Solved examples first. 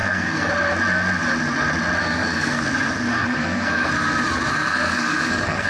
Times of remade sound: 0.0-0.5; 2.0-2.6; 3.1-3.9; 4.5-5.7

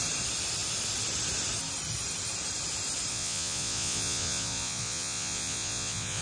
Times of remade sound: 3.1-6.2

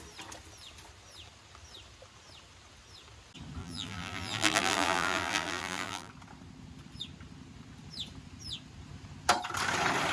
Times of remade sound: 3.6-6.1

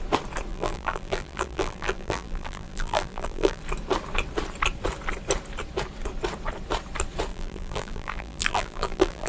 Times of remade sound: 0.5-3.6; 7.3-9.3

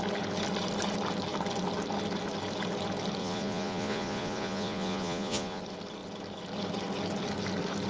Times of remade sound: 3.2-5.6

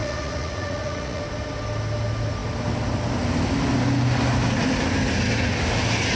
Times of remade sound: 0.0-1.2

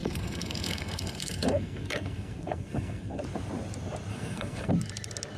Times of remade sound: 0.0-3.2; 4.1-4.7

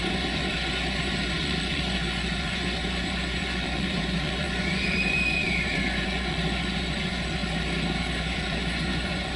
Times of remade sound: 0.0-7.4; 8.3-9.4